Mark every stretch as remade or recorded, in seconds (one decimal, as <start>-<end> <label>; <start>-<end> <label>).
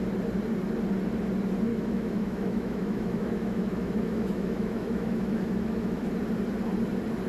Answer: 0.0-1.7 recorded; 1.7-6.1 remade; 6.1-7.3 recorded